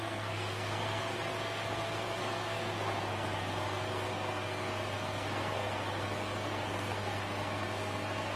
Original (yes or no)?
no